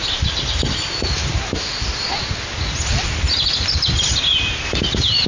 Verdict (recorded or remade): recorded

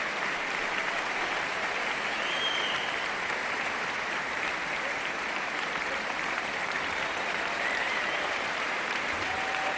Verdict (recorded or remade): remade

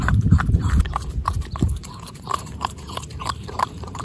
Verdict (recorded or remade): remade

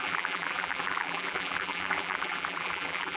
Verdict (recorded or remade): remade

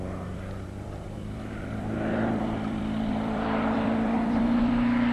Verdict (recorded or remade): remade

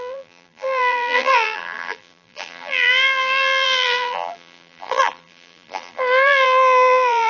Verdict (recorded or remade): remade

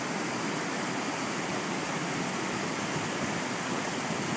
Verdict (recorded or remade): recorded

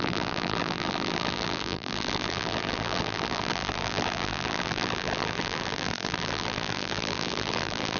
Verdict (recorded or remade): remade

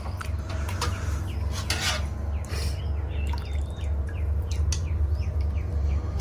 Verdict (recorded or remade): recorded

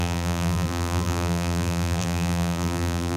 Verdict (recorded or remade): remade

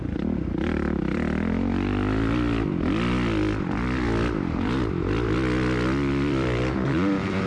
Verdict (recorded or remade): remade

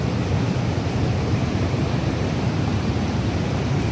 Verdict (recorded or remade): remade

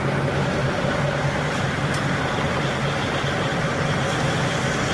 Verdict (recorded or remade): remade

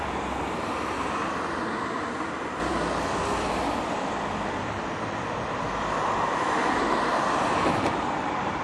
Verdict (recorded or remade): remade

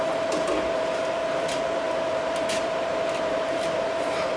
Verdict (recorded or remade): remade